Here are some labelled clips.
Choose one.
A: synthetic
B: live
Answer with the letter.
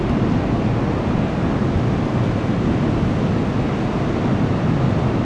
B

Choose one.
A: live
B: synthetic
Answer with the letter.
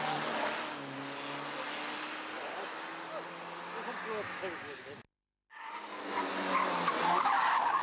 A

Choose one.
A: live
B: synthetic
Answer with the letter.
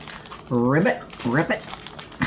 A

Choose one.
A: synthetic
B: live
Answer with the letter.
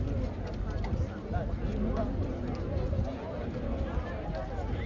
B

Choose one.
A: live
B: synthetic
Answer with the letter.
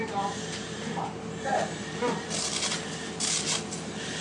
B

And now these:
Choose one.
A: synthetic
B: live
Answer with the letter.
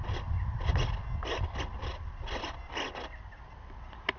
B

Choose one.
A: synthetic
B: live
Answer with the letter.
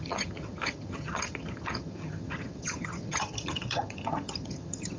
A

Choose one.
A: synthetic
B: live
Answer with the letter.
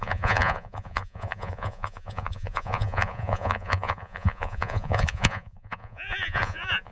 A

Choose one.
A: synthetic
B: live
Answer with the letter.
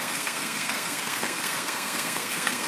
A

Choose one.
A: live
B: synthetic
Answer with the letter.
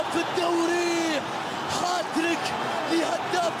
A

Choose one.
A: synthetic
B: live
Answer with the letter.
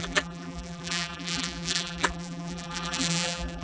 A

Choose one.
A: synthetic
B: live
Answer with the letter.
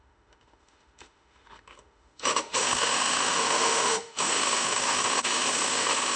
A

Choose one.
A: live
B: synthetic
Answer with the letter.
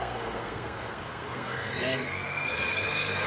B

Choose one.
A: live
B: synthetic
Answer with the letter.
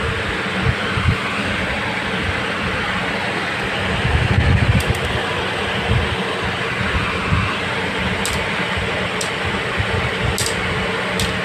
A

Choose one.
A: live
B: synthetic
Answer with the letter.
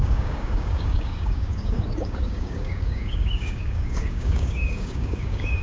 B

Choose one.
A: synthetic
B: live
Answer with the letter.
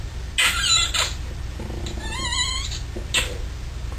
B